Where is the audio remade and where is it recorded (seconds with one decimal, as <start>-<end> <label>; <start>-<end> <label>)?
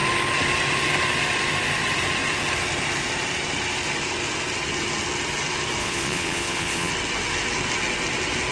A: 0.0-5.8 recorded; 5.8-6.9 remade; 6.9-8.5 recorded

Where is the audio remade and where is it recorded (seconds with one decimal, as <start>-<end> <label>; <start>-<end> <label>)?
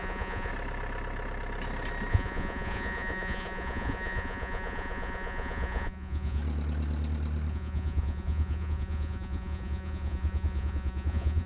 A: 0.0-0.5 remade; 0.5-2.1 recorded; 2.1-6.4 remade; 6.4-7.5 recorded; 7.5-11.5 remade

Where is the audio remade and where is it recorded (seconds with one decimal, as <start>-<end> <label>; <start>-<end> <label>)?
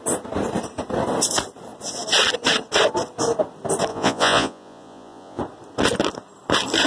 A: 0.0-3.9 recorded; 3.9-5.4 remade; 5.4-6.9 recorded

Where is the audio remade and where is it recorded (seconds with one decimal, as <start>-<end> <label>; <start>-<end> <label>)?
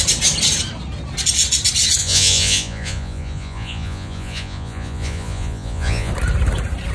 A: 0.0-2.0 recorded; 2.0-6.1 remade; 6.1-6.9 recorded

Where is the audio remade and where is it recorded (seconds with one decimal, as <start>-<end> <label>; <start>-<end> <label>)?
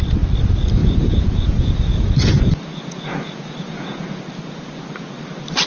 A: 0.0-0.8 recorded; 0.8-4.2 remade; 4.2-5.7 recorded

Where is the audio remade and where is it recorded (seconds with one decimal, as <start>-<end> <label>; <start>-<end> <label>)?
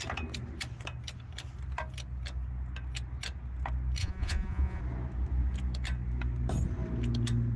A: 0.0-4.0 recorded; 4.0-4.8 remade; 4.8-7.6 recorded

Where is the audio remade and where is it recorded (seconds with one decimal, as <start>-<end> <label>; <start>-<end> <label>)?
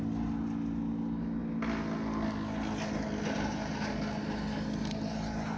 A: 0.0-5.6 recorded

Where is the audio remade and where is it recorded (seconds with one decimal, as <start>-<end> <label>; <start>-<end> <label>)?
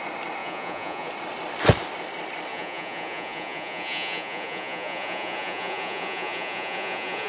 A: 0.0-0.4 recorded; 0.4-1.1 remade; 1.1-2.5 recorded; 2.5-7.3 remade